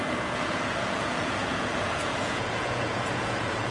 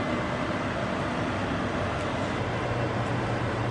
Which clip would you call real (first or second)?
second